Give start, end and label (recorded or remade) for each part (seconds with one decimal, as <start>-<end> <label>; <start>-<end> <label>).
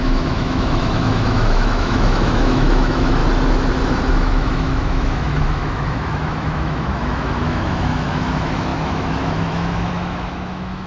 0.0-3.2 remade; 3.2-4.1 recorded; 4.1-10.9 remade